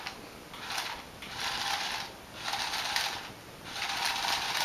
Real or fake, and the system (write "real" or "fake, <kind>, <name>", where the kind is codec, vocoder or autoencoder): real